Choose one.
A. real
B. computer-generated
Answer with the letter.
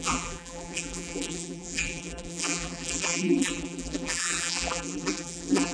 B